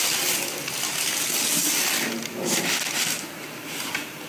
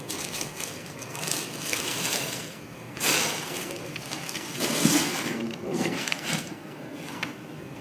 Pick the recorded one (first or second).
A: first